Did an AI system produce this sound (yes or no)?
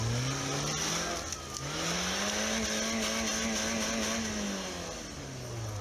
no